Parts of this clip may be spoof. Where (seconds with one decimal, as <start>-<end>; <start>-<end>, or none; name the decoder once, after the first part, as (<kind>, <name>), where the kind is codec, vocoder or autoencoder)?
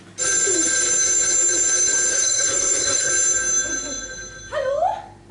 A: 2.1-3.1 (codec, SNAC)